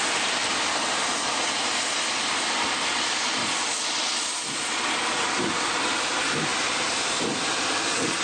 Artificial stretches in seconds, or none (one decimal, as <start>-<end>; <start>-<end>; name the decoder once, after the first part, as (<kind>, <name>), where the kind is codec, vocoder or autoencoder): none